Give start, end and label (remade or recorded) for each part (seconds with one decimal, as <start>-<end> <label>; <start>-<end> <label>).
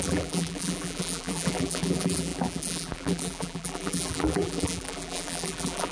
0.0-5.9 remade